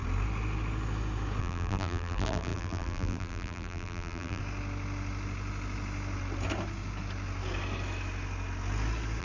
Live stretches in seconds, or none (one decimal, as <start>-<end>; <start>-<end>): 0.0-1.4; 4.4-9.2